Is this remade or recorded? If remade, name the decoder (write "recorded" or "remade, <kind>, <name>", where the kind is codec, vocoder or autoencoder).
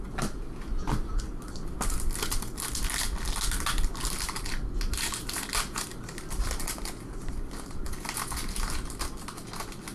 recorded